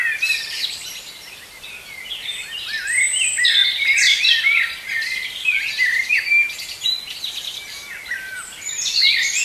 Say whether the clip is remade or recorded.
remade